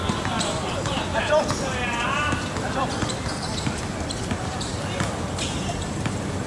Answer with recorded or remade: remade